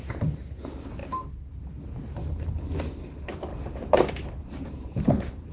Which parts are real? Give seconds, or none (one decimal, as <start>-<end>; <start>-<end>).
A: 1.0-1.6; 2.2-3.0; 3.5-4.1